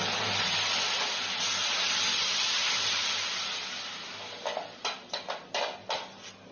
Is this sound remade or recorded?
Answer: recorded